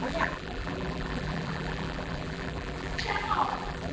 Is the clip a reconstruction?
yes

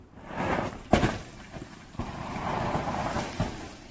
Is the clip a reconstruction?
yes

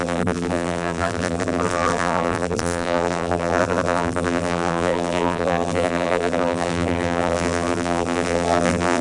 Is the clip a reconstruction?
yes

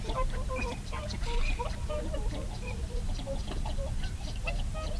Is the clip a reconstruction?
yes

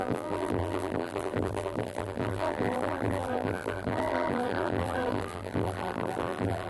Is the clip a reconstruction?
yes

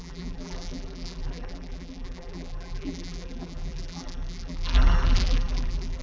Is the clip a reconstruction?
yes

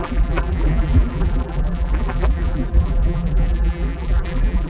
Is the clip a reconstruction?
yes